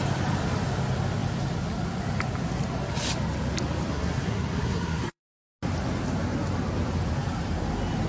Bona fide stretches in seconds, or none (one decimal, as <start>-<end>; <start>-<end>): 0.0-3.9; 5.2-8.1